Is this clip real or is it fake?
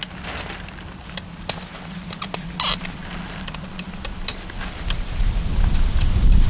real